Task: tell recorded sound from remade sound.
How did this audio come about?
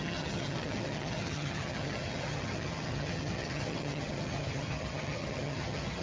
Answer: remade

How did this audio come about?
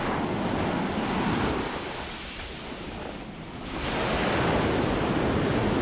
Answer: recorded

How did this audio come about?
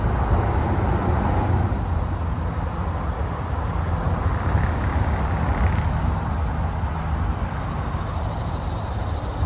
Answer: recorded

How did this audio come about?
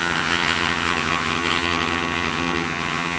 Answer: remade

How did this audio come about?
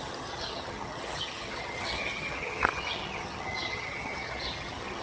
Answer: remade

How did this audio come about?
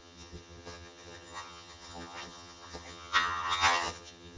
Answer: remade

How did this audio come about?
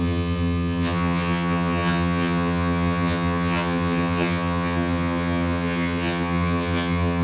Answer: remade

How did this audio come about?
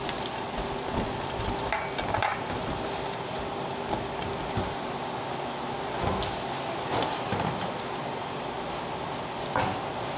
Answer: recorded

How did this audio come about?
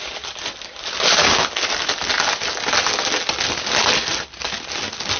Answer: recorded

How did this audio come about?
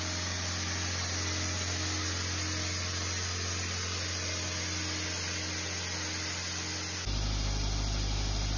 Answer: recorded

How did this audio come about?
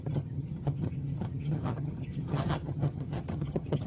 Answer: remade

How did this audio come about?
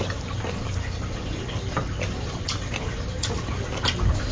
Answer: recorded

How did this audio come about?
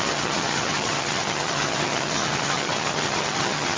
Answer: remade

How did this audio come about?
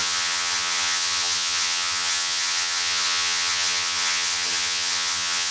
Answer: remade